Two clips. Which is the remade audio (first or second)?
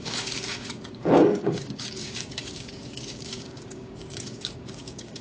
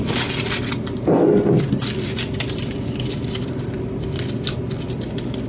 first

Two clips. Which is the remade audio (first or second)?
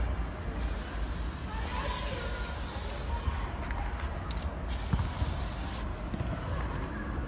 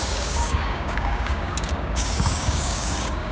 second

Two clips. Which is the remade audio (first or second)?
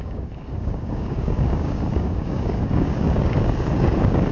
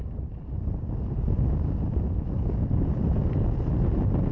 first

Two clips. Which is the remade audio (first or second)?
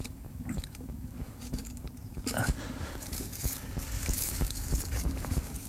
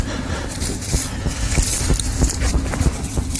first